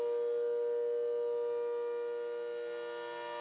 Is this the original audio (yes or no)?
yes